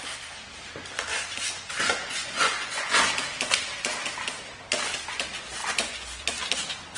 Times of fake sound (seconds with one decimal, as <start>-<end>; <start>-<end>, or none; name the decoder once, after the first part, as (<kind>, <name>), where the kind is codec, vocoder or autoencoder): 1.1-3.1 (vocoder, Vocos); 5.6-6.2